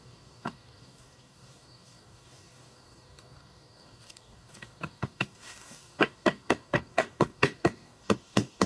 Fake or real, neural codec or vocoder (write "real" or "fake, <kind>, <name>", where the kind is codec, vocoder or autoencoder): fake, codec, DAC